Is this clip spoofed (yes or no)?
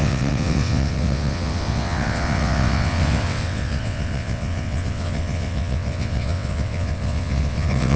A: yes